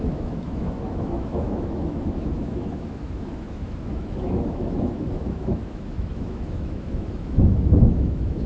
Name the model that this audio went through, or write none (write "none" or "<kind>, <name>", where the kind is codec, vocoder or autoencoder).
autoencoder, DAC-VAE